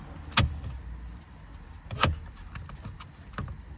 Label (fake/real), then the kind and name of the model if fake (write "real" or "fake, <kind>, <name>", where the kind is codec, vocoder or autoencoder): real